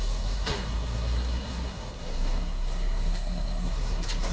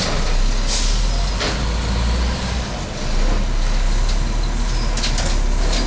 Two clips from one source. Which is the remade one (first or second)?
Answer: first